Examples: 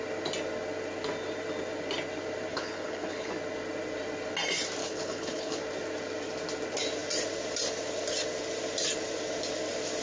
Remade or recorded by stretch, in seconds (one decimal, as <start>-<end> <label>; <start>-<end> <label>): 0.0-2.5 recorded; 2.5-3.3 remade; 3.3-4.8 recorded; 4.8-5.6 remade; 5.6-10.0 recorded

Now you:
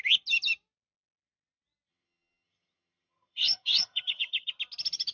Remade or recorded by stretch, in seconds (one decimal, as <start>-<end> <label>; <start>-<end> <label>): 0.0-1.9 recorded; 1.9-4.5 remade; 4.5-5.1 recorded

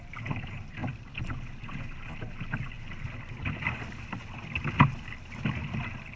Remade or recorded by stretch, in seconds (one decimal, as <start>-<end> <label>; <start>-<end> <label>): 0.0-6.2 recorded

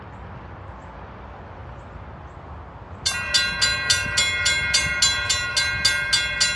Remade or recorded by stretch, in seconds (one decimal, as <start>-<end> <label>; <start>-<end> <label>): 0.0-6.5 recorded

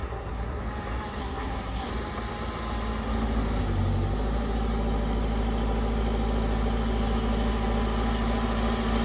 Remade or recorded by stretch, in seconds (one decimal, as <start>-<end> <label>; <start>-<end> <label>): 0.0-0.6 remade; 0.6-1.2 recorded; 1.2-1.9 remade; 1.9-9.0 recorded